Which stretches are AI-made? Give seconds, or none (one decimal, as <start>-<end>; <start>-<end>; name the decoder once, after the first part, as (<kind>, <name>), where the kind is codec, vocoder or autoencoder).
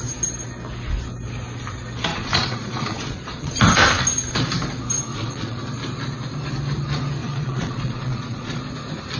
2.1-3.5 (vocoder, Vocos); 5.1-5.6; 7.2-8.6